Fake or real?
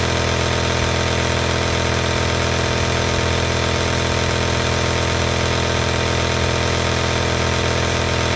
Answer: real